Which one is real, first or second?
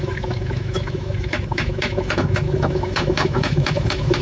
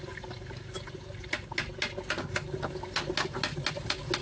second